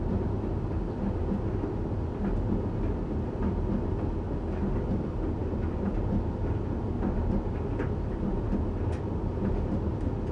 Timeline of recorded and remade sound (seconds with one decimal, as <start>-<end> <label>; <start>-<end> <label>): 0.0-10.3 recorded